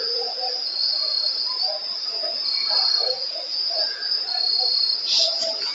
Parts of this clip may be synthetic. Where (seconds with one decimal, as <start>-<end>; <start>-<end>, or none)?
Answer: 0.0-5.7